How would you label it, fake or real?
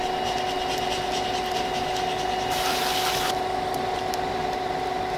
real